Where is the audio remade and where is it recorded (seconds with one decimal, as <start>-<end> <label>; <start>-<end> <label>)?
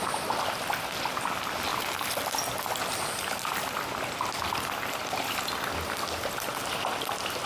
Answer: 0.0-1.7 remade; 1.7-5.5 recorded; 5.5-7.5 remade